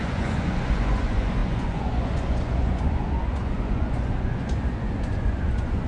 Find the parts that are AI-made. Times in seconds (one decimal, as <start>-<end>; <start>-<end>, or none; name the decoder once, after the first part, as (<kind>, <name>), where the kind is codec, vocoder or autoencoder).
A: 0.0-5.9 (vocoder, Vocos)